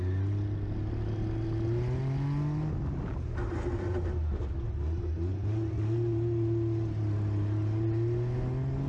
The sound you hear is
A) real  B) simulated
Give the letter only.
A